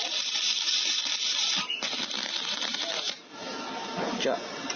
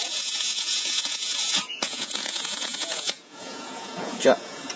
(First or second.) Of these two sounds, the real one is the first